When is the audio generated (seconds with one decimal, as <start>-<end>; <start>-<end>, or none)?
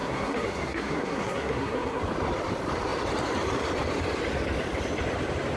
0.0-2.0